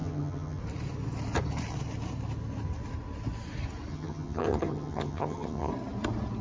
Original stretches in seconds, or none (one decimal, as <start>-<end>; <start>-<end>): 0.6-3.9; 5.7-6.4